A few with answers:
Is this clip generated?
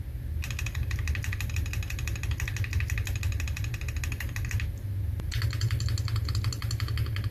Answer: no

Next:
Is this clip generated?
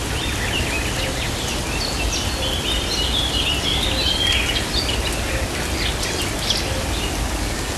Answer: no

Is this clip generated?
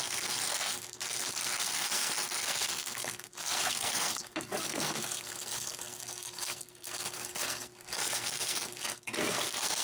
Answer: yes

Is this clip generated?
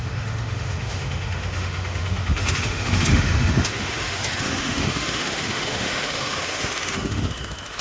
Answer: yes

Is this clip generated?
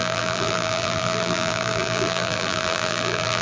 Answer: yes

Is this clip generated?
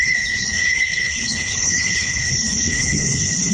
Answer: yes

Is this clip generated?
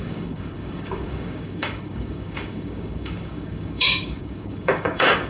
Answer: yes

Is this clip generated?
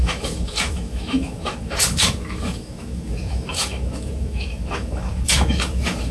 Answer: yes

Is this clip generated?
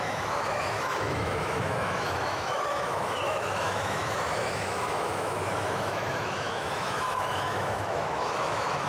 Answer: yes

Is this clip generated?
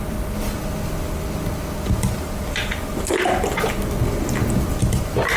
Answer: no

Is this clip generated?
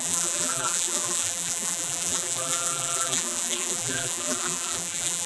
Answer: yes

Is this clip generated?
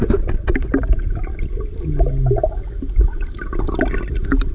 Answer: no